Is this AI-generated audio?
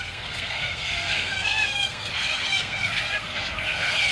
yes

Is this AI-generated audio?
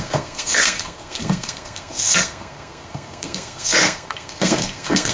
yes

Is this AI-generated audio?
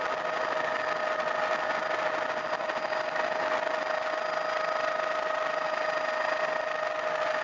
no